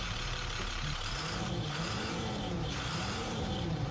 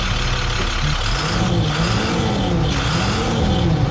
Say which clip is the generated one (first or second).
first